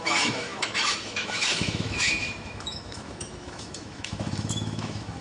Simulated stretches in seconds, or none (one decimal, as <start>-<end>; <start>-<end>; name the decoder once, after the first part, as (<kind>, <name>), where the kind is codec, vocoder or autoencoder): 0.0-5.2 (autoencoder, DAC-VAE)